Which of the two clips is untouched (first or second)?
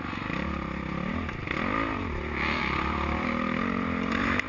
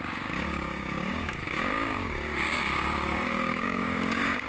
first